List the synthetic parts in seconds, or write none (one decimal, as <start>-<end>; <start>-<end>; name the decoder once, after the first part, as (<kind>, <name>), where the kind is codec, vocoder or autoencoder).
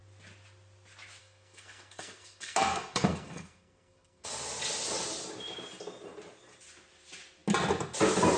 1.2-4.3 (codec, SNAC)